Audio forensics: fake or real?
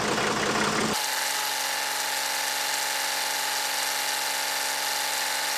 real